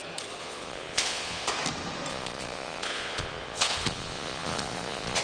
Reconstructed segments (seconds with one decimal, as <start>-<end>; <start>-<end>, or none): 0.4-1.5; 2.1-5.2